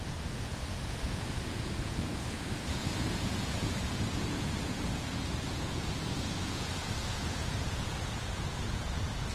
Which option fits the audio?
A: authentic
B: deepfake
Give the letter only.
B